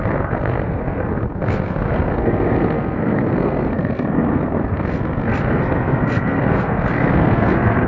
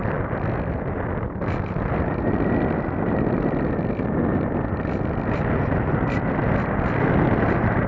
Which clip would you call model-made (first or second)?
first